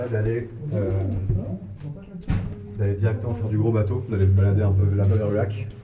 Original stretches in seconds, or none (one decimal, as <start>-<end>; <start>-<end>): 0.0-5.8